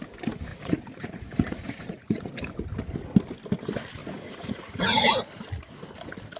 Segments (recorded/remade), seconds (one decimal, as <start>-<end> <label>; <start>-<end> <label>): 0.0-0.5 recorded; 0.5-2.3 remade; 2.3-4.0 recorded; 4.0-5.1 remade; 5.1-6.4 recorded